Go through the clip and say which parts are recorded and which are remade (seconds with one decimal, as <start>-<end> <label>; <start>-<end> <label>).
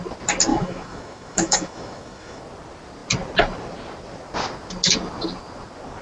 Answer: 0.0-0.5 recorded; 0.5-2.4 remade; 2.4-6.0 recorded